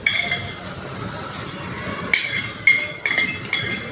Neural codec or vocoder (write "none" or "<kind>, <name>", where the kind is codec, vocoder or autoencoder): none